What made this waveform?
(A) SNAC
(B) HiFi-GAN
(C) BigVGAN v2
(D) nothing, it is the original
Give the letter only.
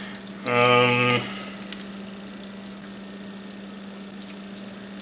D